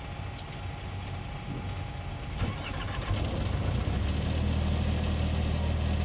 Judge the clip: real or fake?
real